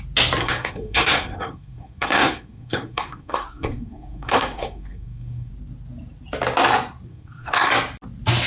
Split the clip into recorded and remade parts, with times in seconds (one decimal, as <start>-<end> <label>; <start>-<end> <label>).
0.0-0.4 recorded; 0.4-5.5 remade; 5.5-7.1 recorded; 7.1-7.7 remade; 7.7-8.5 recorded